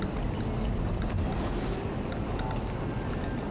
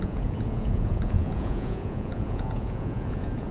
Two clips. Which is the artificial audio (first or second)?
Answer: second